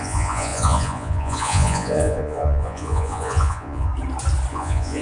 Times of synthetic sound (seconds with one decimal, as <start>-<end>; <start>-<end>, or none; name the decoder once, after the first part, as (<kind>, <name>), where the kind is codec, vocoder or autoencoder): 0.0-3.9 (vocoder, Vocos); 4.5-5.0